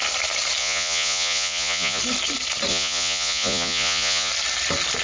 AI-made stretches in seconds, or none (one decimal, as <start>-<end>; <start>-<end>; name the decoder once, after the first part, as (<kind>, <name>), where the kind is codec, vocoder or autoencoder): 0.6-2.0 (vocoder, Vocos); 2.7-4.3